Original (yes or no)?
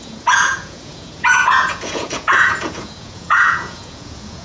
no